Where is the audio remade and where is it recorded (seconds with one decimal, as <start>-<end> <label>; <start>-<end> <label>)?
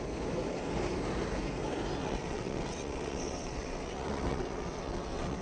0.0-2.0 recorded; 2.0-5.4 remade